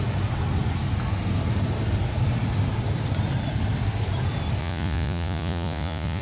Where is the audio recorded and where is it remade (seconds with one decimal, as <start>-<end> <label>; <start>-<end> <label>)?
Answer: 0.0-4.6 recorded; 4.6-6.2 remade